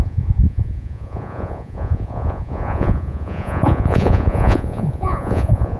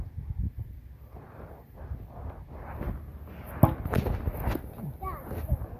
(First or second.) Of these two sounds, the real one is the second